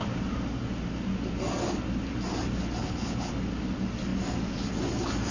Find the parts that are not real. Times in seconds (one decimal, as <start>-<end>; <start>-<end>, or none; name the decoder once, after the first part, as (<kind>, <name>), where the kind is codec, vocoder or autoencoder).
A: 2.8-3.3 (codec, HILCodec)